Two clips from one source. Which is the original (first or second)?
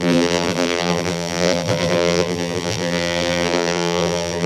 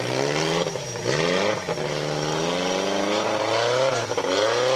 second